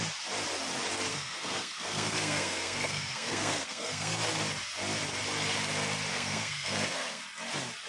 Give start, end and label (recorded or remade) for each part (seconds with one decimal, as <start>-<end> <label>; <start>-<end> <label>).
0.0-1.1 recorded; 1.1-4.2 remade; 4.2-6.1 recorded; 6.1-7.2 remade; 7.2-7.9 recorded